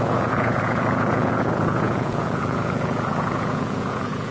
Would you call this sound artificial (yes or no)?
yes